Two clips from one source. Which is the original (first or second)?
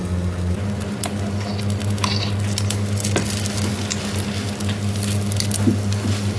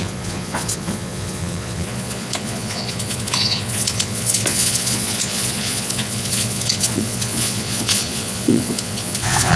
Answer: first